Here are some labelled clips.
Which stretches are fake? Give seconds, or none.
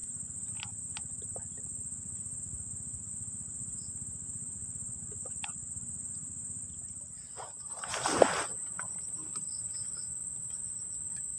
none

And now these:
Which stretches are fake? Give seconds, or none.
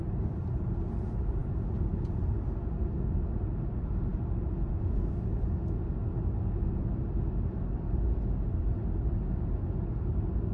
none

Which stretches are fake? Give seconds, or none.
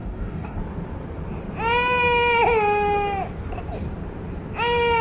0.0-0.6 (codec, DAC)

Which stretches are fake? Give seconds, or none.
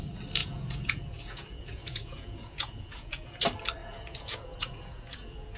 0.4-3.4 (vocoder, Vocos); 3.8-5.6